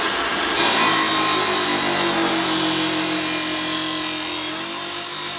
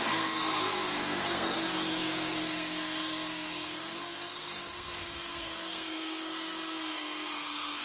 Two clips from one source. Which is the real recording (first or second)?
first